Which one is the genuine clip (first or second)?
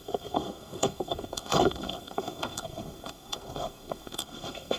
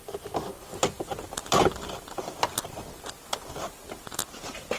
second